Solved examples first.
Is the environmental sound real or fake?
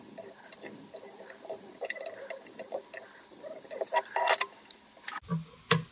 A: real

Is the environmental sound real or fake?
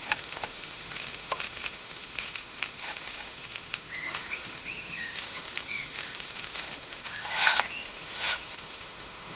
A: fake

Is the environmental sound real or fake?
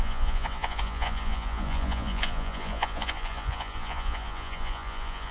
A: fake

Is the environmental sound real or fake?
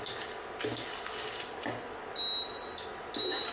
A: real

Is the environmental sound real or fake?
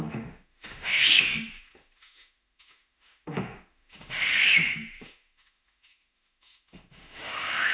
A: fake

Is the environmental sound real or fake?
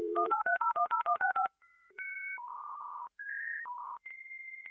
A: fake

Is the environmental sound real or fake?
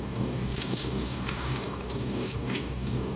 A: fake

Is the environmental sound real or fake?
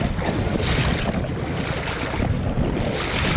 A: real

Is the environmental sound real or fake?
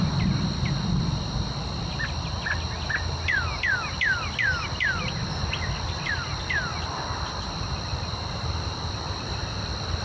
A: real